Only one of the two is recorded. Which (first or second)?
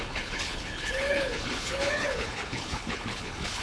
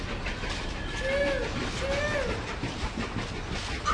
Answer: second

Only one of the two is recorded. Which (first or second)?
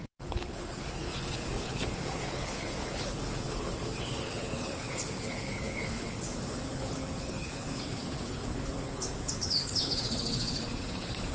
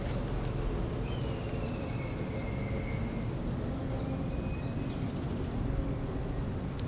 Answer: second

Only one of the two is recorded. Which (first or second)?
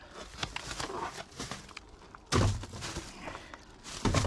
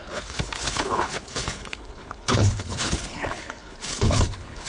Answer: first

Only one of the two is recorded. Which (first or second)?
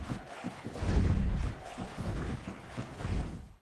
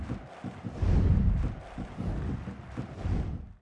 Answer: second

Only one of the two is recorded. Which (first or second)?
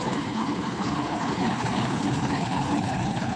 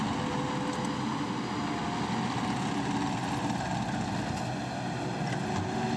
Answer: second